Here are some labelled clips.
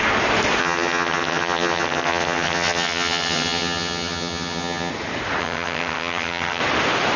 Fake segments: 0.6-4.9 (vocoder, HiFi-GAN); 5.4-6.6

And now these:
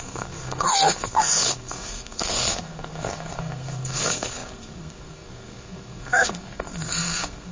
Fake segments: 0.0-7.5 (codec, SNAC)

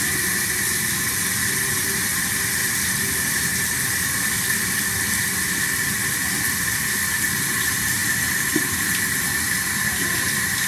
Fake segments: 8.0-10.7 (vocoder, BigVGAN v2)

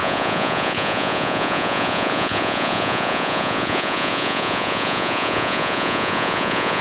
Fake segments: 0.0-6.8 (vocoder, Vocos)

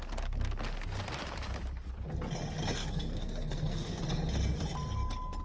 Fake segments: 2.8-4.0 (codec, SNAC)

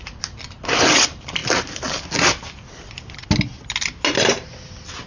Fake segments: none

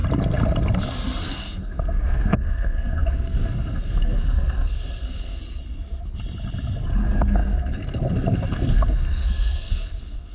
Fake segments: 1.2-5.4 (codec, SNAC); 7.0-10.3